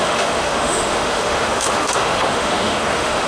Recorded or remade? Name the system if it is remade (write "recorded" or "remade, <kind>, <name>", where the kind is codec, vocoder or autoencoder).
remade, autoencoder, DAC-VAE